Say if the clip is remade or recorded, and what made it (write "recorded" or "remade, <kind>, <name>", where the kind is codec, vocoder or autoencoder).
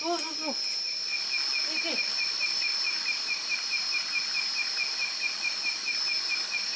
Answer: recorded